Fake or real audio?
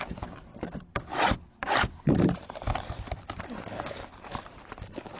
fake